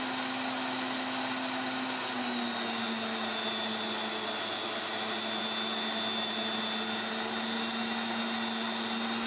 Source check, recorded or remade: recorded